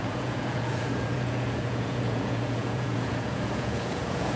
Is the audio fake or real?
fake